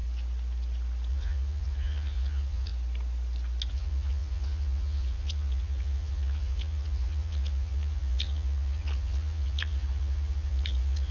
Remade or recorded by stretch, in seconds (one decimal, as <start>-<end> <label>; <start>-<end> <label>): 0.0-1.1 recorded; 1.1-2.7 remade; 2.7-3.7 recorded; 3.7-11.1 remade